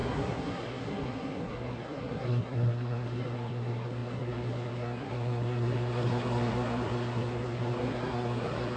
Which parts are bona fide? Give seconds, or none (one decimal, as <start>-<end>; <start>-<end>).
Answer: none